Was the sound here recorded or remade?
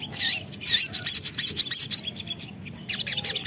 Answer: recorded